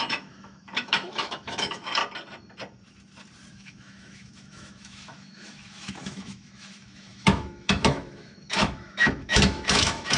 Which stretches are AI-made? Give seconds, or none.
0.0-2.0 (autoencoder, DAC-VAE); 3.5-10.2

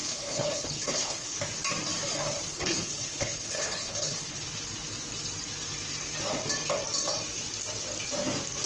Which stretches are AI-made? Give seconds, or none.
0.0-1.4 (codec, HILCodec); 2.5-4.4

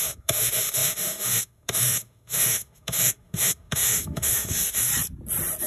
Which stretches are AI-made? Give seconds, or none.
0.0-4.9 (autoencoder, DAC-VAE)

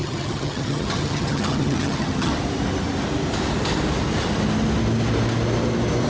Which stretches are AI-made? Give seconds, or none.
0.0-2.3 (vocoder, HiFi-GAN)

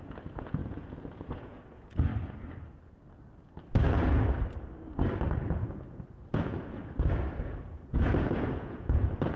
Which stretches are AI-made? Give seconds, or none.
0.0-2.1 (vocoder, Vocos); 5.6-6.8; 7.4-9.4